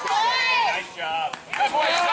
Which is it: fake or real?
real